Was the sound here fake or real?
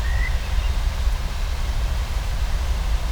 real